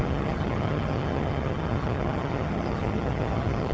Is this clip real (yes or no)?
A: no